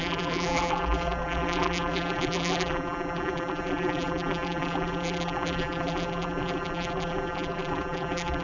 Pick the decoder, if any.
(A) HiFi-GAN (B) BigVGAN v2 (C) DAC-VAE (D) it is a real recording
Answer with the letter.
B